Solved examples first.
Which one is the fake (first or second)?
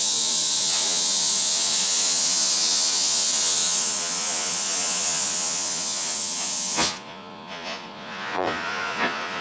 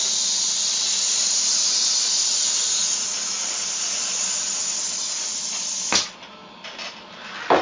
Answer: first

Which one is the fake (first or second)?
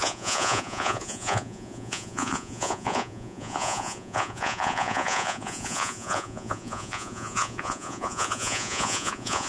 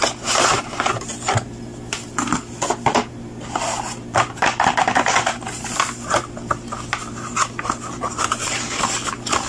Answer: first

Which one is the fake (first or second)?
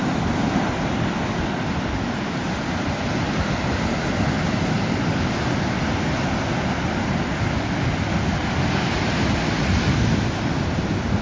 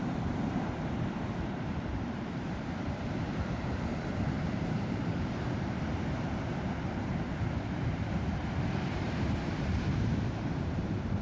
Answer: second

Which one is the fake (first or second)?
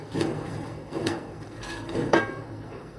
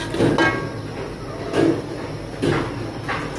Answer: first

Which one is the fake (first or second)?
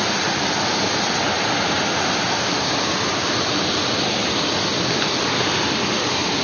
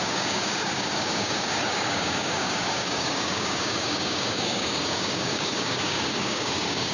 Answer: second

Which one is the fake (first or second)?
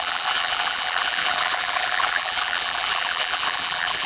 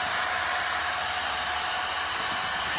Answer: first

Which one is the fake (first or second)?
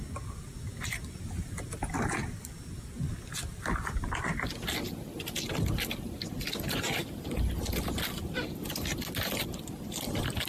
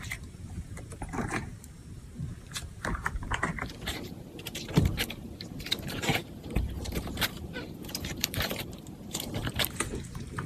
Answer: second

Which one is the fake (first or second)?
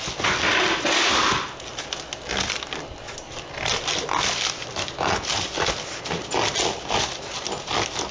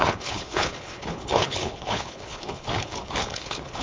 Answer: second